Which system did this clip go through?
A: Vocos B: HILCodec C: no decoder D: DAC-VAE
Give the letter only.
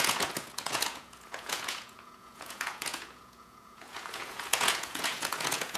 A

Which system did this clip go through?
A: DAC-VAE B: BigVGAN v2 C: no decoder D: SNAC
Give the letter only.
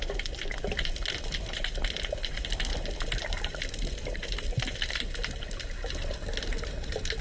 C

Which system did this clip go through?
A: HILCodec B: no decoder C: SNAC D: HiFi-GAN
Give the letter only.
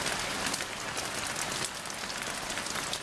B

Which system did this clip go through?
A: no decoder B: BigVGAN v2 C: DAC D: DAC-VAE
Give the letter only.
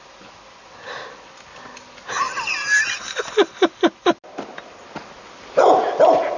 A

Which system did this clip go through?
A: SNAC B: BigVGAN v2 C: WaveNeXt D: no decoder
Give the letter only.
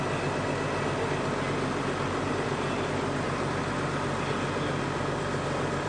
D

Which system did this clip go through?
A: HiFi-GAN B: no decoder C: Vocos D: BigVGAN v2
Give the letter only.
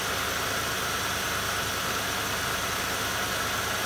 B